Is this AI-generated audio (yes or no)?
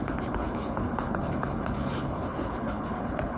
yes